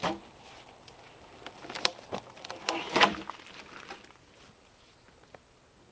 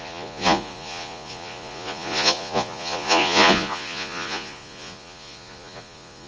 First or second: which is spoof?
second